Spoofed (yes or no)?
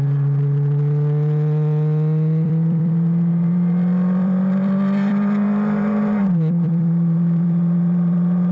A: yes